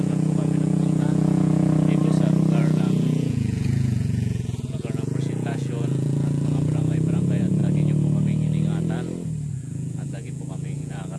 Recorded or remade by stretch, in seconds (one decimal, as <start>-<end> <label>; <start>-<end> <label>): 0.0-2.0 remade; 2.0-2.6 recorded; 2.6-7.6 remade; 7.6-9.5 recorded; 9.5-11.2 remade